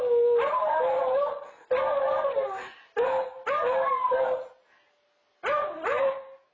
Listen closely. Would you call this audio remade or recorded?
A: recorded